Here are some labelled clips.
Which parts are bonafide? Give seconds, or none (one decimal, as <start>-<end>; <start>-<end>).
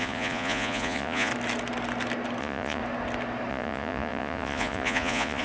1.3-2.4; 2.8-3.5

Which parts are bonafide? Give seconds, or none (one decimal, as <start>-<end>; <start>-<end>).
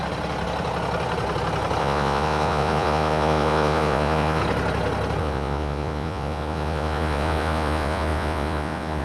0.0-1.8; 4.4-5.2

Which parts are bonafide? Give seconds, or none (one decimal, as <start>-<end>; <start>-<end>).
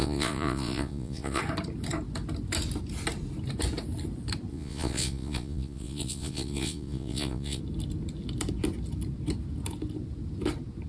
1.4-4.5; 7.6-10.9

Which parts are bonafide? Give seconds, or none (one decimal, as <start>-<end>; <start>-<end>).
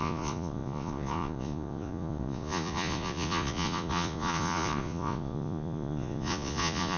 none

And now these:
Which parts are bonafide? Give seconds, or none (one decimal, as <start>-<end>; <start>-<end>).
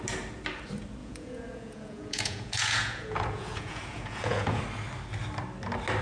0.0-1.0; 4.6-6.0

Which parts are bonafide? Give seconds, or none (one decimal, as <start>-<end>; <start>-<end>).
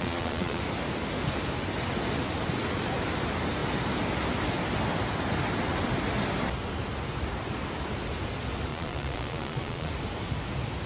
0.6-8.7; 9.9-10.9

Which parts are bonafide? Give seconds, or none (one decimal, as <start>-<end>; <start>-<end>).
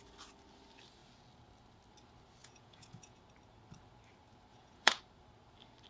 0.0-2.4; 3.2-4.5; 5.0-5.9